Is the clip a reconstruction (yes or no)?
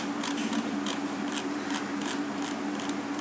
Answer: no